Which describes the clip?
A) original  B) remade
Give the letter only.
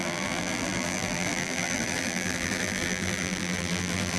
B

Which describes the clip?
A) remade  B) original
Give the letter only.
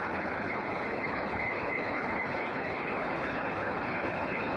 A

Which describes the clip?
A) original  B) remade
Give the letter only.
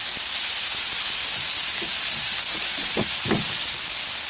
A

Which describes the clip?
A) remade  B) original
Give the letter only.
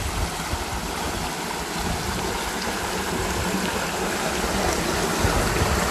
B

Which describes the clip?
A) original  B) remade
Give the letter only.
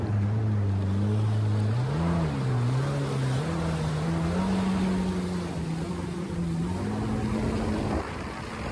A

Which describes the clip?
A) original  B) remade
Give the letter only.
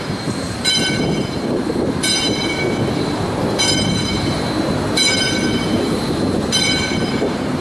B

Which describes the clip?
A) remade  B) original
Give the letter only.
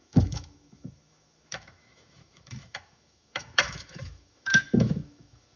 A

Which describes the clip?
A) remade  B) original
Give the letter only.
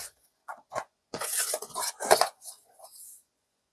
A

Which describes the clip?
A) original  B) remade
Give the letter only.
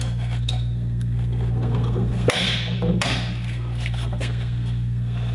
B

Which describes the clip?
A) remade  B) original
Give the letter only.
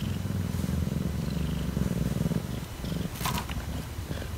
B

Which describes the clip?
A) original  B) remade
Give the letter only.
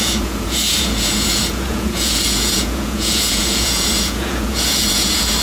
B